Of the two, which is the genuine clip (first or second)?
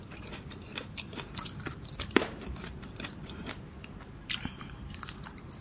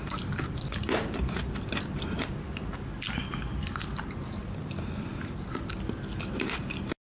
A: second